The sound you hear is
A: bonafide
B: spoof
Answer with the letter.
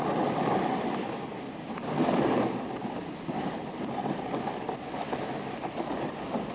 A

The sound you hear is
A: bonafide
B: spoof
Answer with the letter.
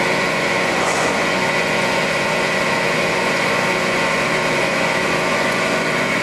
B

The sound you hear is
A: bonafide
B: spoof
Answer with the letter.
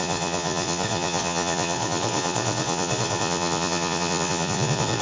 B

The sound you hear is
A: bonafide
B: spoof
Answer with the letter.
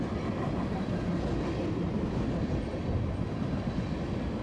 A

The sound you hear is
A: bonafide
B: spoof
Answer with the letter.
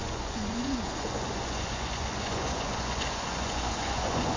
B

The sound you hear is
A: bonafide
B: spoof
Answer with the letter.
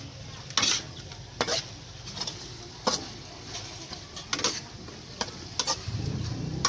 A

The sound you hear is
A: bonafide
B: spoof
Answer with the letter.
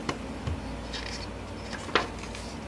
A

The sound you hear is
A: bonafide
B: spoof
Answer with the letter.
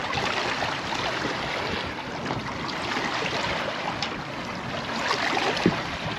A